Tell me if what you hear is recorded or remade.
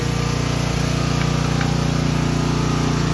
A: recorded